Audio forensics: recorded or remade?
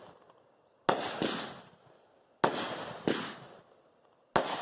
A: recorded